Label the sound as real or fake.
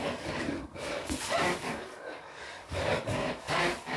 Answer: fake